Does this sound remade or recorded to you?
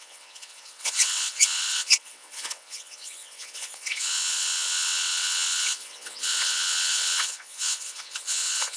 remade